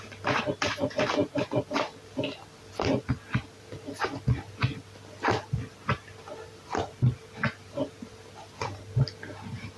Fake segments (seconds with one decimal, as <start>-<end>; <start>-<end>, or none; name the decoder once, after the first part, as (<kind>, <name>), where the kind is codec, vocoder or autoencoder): none